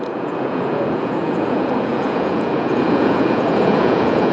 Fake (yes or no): yes